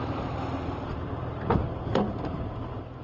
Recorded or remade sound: recorded